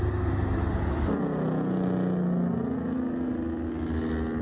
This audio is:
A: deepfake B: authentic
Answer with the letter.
B